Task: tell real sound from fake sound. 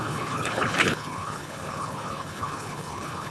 fake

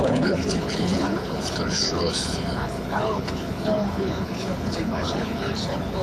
fake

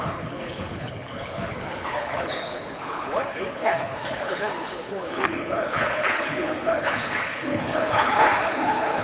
fake